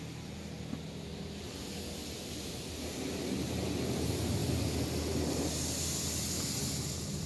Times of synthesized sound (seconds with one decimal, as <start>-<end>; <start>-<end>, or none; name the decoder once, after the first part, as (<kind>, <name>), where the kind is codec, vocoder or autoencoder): 2.0-3.0 (vocoder, BigVGAN v2)